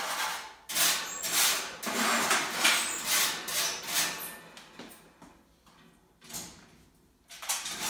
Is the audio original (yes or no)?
yes